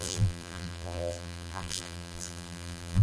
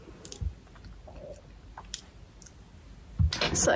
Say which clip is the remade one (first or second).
first